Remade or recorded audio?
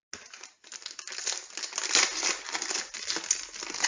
recorded